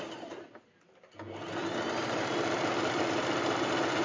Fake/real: real